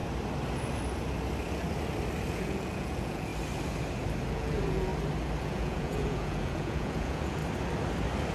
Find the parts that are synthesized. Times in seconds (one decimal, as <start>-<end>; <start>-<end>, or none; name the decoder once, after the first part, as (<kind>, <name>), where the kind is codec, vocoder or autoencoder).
2.3-3.3 (vocoder, Vocos); 4.3-4.9; 5.4-7.4